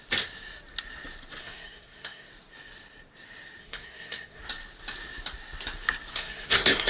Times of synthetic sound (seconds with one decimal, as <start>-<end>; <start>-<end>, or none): 1.4-2.3; 3.6-4.4; 6.1-6.9